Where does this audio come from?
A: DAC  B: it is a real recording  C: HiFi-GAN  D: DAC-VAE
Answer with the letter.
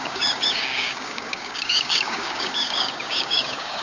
A